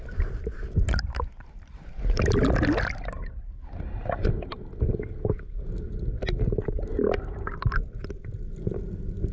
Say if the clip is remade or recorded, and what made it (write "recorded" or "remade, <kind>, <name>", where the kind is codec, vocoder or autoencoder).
recorded